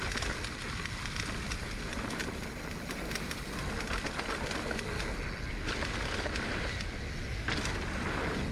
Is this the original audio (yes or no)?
yes